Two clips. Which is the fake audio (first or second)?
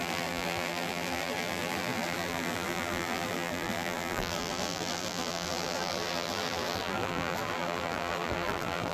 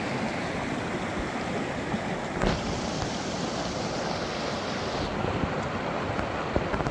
first